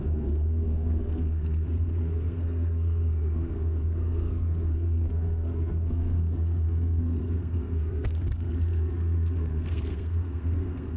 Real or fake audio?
fake